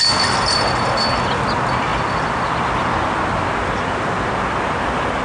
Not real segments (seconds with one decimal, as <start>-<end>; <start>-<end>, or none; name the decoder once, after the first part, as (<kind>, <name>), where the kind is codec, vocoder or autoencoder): none